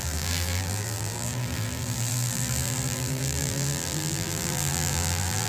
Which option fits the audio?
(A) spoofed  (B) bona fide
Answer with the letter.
A